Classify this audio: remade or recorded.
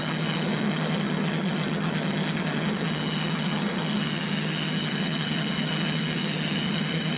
remade